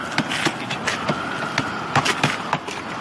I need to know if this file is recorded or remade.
recorded